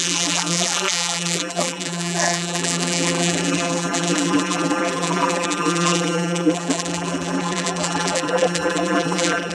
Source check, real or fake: fake